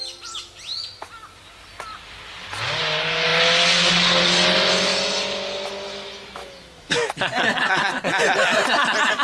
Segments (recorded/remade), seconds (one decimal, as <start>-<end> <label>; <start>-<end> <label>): 0.0-6.4 recorded; 6.4-7.1 remade; 7.1-9.2 recorded